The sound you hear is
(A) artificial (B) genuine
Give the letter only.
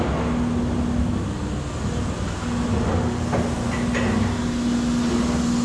B